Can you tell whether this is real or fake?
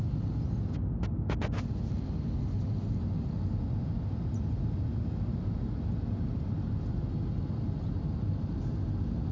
real